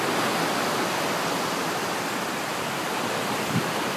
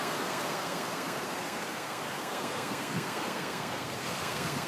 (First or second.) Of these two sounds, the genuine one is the first